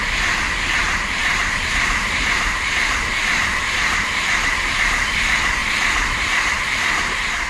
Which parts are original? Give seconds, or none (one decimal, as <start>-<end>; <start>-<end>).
0.0-1.2; 4.9-7.5